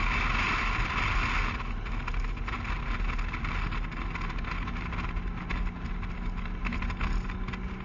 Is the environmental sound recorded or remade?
recorded